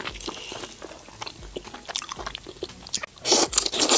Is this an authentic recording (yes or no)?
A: yes